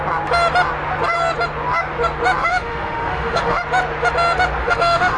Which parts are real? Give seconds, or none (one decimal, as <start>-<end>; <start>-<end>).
0.0-2.4; 3.6-4.6